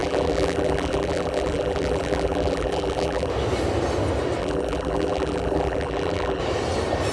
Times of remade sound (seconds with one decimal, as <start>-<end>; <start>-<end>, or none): 0.0-3.3; 4.4-6.4